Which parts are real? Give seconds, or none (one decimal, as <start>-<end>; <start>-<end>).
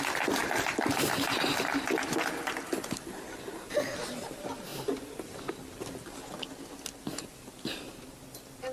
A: 0.0-0.4; 2.6-4.7; 5.5-8.7